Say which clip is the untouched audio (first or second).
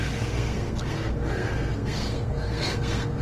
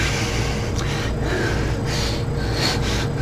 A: second